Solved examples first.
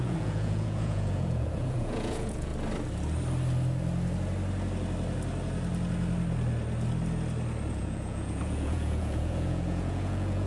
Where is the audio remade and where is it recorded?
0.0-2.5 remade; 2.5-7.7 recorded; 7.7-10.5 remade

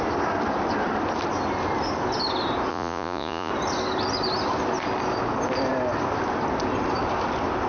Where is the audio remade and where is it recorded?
0.0-2.7 recorded; 2.7-3.5 remade; 3.5-7.7 recorded

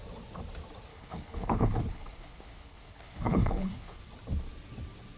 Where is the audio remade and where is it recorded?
0.0-0.9 recorded; 0.9-4.0 remade; 4.0-5.2 recorded

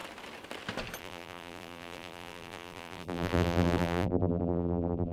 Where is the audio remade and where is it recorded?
0.0-1.0 recorded; 1.0-5.1 remade

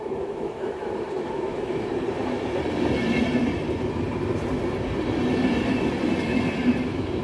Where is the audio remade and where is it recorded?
0.0-1.9 remade; 1.9-6.2 recorded; 6.2-7.2 remade

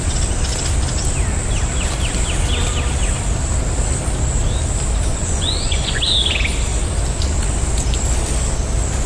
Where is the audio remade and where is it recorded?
0.0-5.1 recorded; 5.1-6.0 remade; 6.0-9.1 recorded

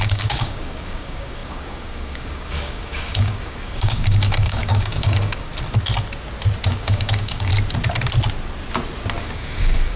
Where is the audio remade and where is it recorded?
0.0-5.5 remade; 5.5-6.7 recorded; 6.7-7.5 remade; 7.5-9.2 recorded; 9.2-10.0 remade